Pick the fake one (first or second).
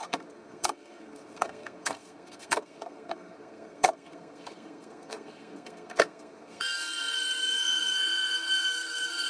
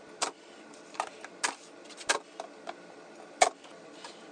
first